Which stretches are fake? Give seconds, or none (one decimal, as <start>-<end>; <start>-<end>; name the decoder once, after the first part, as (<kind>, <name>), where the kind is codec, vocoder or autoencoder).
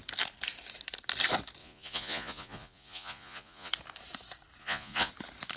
1.6-3.7 (vocoder, Vocos); 4.6-5.1